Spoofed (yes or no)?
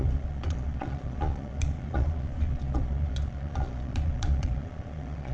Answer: yes